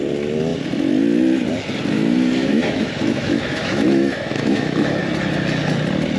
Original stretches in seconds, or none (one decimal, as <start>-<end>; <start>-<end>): 0.0-2.4; 5.0-6.2